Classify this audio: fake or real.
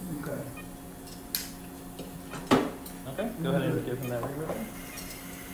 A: real